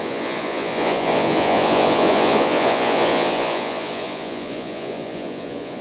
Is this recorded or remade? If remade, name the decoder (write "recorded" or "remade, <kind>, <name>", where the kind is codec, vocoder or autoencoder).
remade, vocoder, Vocos